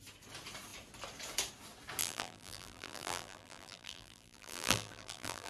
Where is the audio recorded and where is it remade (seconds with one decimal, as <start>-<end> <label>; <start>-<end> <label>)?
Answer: 0.0-2.0 recorded; 2.0-5.5 remade